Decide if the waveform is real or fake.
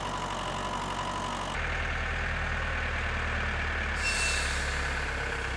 real